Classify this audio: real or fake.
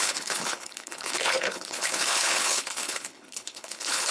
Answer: fake